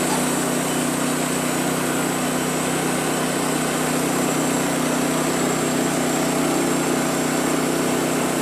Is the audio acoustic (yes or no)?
yes